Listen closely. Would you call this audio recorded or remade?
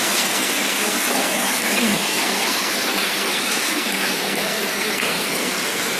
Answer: remade